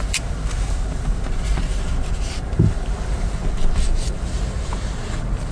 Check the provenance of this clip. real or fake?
fake